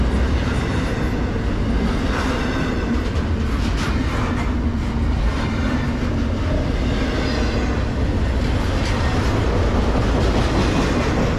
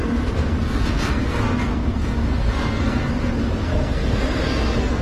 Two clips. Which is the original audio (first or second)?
first